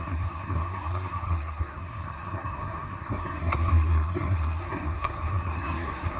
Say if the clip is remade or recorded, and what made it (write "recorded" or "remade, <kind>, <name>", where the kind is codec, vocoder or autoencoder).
remade, codec, SNAC